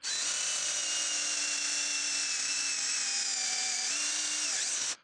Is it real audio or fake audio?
real